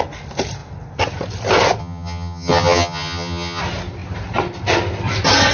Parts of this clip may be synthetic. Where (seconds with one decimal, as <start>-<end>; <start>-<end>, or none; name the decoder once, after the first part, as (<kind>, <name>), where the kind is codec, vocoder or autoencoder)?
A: 1.8-3.6 (vocoder, HiFi-GAN)